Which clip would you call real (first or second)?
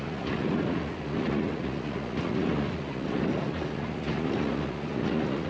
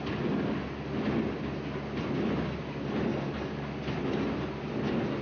second